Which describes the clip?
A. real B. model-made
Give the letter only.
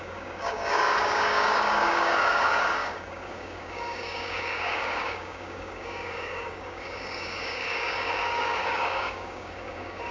B